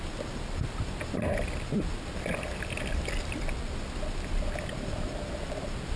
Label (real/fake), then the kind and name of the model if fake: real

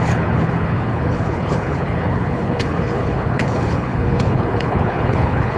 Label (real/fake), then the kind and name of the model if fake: fake, codec, HILCodec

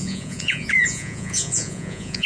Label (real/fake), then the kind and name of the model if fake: fake, vocoder, Vocos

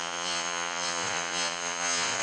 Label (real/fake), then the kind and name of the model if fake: fake, vocoder, Vocos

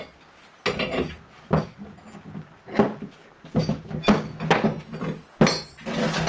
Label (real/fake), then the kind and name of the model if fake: real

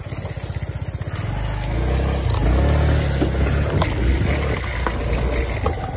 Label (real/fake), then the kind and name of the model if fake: real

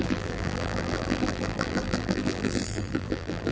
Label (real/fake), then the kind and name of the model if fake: fake, vocoder, BigVGAN v2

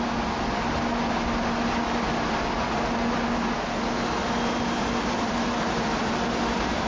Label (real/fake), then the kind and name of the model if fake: real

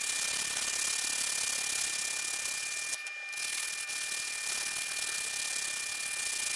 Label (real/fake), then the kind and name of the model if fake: real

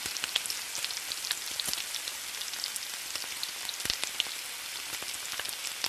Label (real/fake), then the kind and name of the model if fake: real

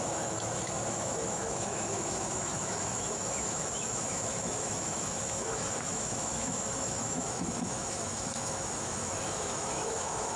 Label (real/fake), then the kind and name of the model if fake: fake, autoencoder, DAC-VAE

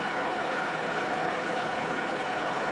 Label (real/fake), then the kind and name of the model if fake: fake, codec, HILCodec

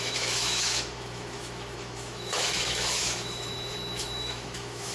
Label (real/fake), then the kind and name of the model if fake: fake, autoencoder, DAC-VAE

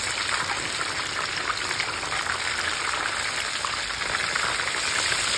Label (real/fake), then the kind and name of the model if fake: real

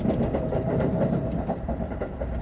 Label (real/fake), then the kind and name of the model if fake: real